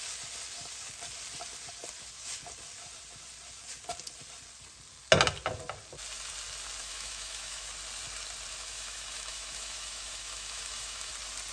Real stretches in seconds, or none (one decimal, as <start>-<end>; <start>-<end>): 0.0-6.8; 7.7-8.5; 11.1-11.5